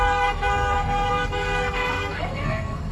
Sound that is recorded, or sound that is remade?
remade